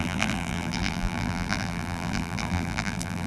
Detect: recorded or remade remade